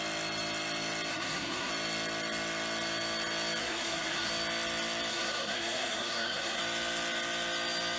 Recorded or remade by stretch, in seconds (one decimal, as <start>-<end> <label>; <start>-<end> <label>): 0.0-1.1 recorded; 1.1-1.7 remade; 1.7-3.6 recorded; 3.6-4.3 remade; 4.3-5.1 recorded; 5.1-6.6 remade; 6.6-8.0 recorded